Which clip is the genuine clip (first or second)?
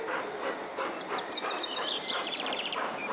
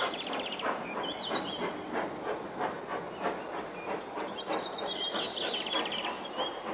second